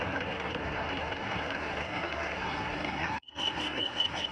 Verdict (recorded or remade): remade